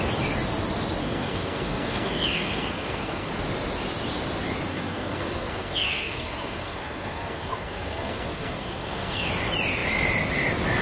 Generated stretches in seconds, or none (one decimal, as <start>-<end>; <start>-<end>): 1.0-3.3; 4.7-9.3